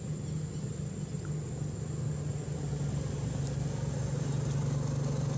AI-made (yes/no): no